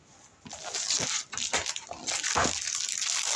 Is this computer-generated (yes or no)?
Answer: no